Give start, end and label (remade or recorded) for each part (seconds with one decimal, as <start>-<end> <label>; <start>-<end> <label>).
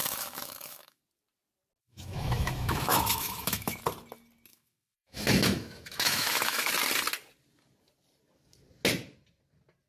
0.0-1.0 remade; 1.0-1.8 recorded; 1.8-3.8 remade; 3.8-4.5 recorded; 4.5-6.7 remade; 6.7-9.9 recorded